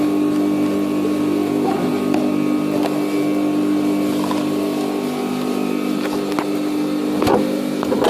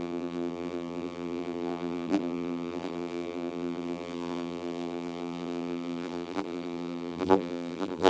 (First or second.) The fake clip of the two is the second